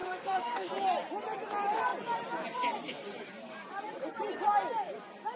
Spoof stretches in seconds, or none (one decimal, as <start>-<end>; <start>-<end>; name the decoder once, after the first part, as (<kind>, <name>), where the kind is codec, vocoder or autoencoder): 0.0-0.7 (autoencoder, DAC-VAE)